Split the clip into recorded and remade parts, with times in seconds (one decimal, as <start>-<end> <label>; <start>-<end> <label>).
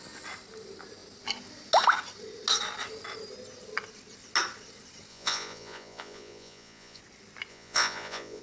0.0-5.1 recorded; 5.1-7.0 remade; 7.0-7.5 recorded; 7.5-8.4 remade